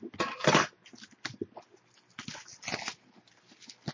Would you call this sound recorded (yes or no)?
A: yes